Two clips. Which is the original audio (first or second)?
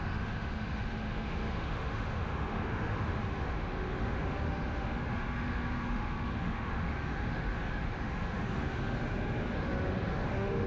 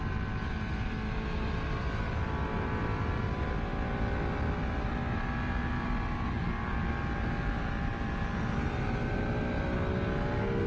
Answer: second